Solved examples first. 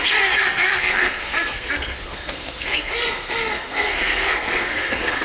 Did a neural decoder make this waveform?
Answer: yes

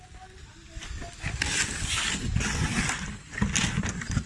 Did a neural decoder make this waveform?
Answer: no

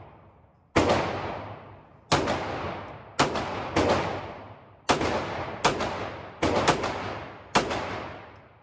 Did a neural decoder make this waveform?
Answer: no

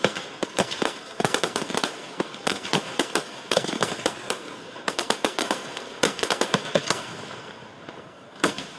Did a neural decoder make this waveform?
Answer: yes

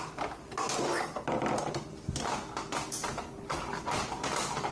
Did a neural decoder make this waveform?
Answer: no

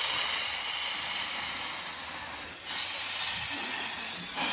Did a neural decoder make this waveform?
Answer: no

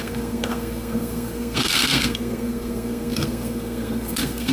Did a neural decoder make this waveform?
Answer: yes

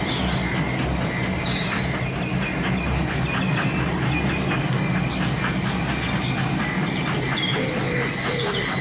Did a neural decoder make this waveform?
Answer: no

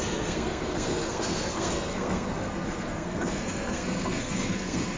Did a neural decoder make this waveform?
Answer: yes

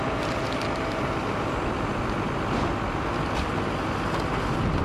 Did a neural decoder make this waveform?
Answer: no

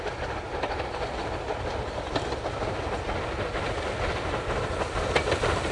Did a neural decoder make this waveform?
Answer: no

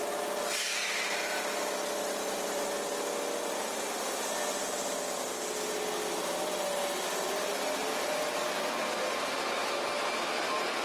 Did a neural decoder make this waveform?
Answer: no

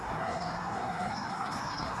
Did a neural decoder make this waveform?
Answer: yes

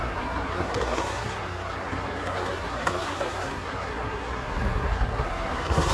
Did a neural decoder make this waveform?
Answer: yes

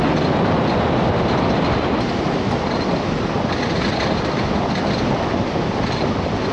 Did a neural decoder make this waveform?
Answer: no